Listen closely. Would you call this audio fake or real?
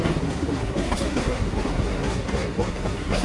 fake